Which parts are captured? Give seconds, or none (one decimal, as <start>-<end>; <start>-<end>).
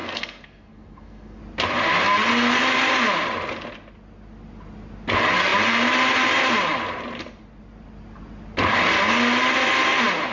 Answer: 1.4-10.3